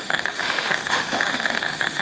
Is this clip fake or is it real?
fake